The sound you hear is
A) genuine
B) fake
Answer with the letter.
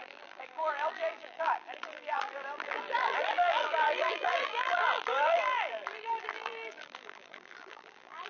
B